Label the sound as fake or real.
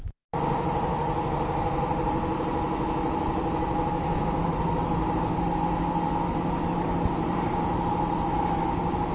real